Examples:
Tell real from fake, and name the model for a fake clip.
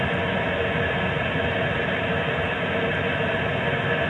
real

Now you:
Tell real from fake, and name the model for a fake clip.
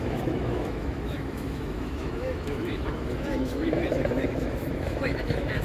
fake, autoencoder, DAC-VAE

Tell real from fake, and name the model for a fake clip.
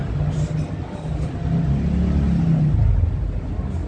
real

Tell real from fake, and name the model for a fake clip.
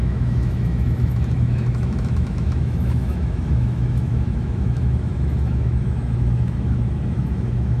fake, autoencoder, DAC-VAE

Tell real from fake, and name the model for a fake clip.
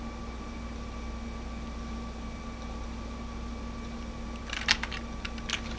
real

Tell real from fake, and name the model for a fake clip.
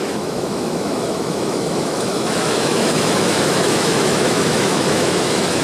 fake, autoencoder, DAC-VAE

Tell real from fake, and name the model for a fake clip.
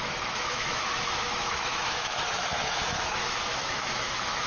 fake, autoencoder, DAC-VAE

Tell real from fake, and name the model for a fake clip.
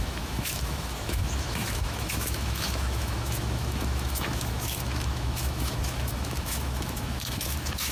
fake, autoencoder, DAC-VAE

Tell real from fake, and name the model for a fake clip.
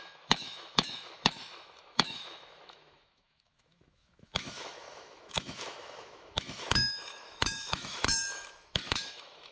fake, autoencoder, DAC-VAE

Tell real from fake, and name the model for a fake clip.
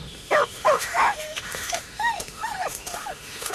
fake, autoencoder, DAC-VAE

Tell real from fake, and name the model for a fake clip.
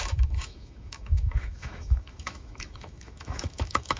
fake, autoencoder, DAC-VAE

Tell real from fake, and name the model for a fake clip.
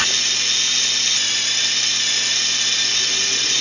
real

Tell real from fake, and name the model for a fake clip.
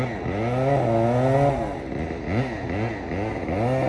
real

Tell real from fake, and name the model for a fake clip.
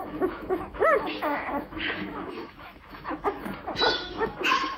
fake, autoencoder, DAC-VAE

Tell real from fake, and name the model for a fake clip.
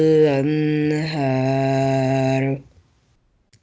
real